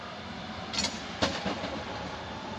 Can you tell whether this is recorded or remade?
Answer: recorded